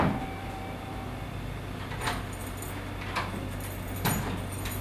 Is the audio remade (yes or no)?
no